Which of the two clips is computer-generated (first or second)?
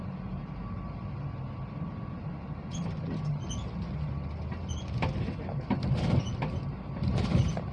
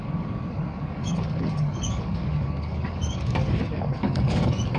second